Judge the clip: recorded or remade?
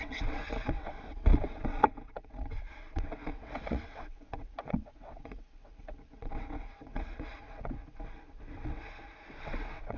remade